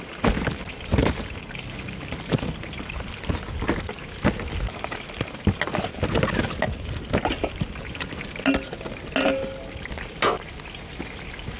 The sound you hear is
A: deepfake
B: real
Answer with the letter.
B